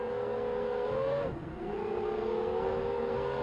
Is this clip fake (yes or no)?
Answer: yes